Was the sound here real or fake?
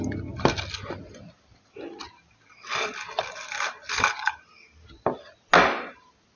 real